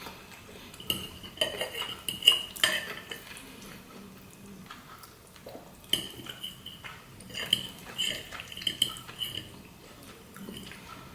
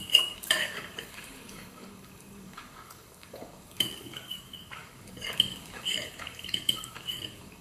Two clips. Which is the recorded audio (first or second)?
first